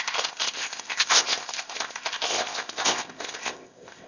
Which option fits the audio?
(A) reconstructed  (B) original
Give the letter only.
A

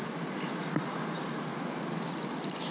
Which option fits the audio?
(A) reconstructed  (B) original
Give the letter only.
B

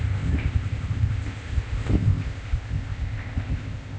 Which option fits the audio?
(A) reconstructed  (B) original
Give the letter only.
A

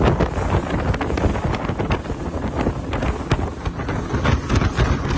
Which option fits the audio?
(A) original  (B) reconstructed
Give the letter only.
A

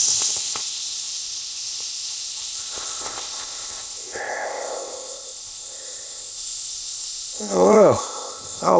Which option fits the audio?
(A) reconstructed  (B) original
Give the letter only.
A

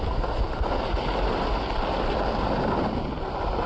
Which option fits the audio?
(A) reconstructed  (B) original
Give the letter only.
B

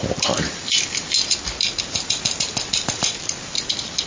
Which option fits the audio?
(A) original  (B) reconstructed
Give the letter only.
A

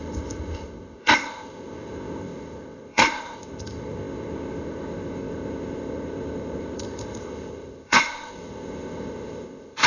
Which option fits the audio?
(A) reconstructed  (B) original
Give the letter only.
A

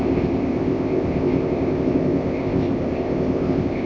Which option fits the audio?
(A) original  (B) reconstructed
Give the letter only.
B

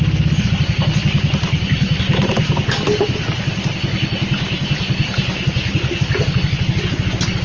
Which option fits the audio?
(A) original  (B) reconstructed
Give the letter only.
A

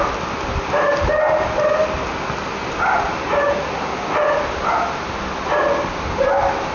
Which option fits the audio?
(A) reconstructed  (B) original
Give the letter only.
B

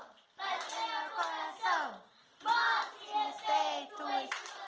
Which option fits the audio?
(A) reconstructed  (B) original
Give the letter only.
B